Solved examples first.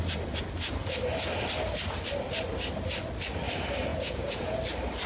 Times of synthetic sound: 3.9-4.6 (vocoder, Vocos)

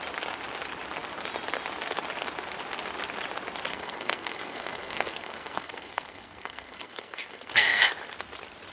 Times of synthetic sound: 3.7-7.9 (codec, SNAC)

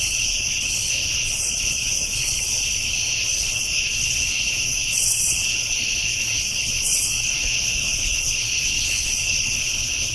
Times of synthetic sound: 0.0-10.1 (codec, HILCodec)

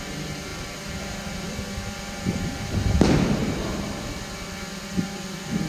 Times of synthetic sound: 0.5-3.0 (vocoder, BigVGAN v2); 3.4-5.7

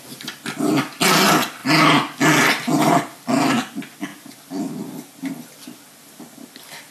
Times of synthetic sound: none

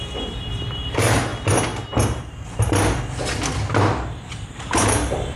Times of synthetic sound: 0.0-1.3 (vocoder, BigVGAN v2); 4.5-5.4

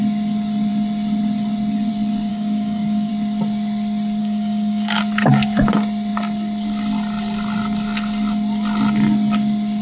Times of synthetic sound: 2.3-3.1 (codec, DAC); 4.2-5.0

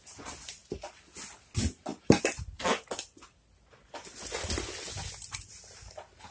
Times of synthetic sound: none